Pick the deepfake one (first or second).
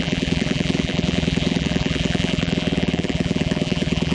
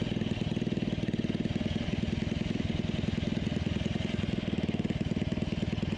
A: first